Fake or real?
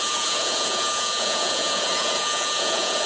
fake